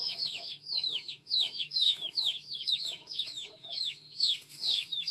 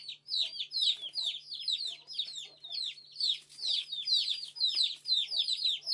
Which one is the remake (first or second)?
first